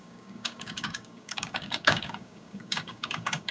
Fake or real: fake